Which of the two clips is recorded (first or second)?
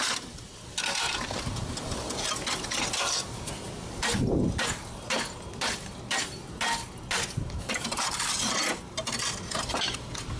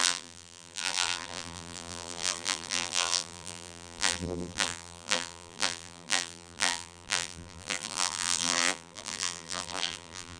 first